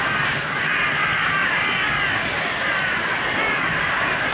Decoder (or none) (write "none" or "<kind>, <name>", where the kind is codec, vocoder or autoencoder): none